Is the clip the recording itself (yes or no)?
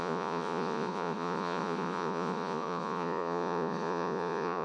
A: no